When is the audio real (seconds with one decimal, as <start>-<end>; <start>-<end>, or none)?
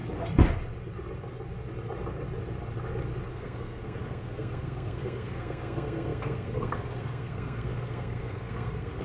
0.0-3.3